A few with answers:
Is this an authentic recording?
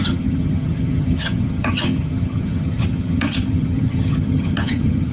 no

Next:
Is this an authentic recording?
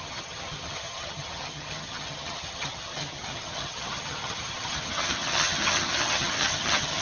no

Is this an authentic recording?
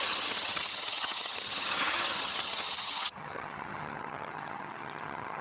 no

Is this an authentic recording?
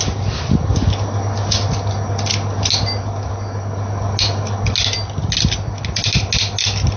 yes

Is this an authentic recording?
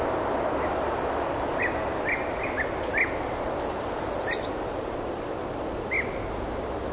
yes